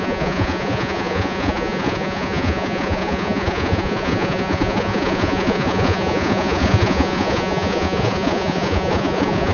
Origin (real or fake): fake